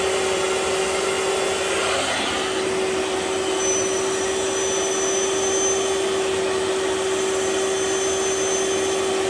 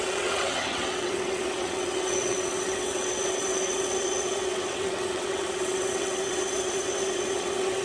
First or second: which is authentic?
first